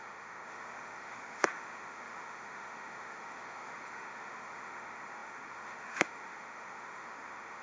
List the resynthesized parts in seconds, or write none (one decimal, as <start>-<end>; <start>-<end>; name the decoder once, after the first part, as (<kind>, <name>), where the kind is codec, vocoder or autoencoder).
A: 0.0-7.6 (autoencoder, DAC-VAE)